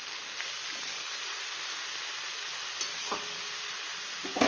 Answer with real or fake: real